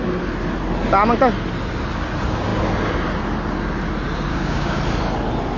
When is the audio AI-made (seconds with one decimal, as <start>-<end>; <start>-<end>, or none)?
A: 4.3-4.8